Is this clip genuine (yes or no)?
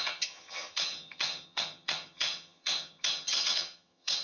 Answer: no